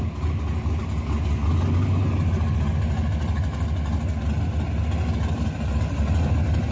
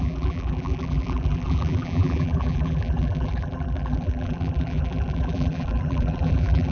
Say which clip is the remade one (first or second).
second